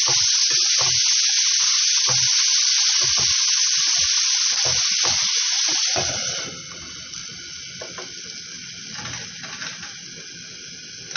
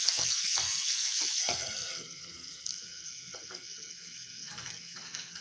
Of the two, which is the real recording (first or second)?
first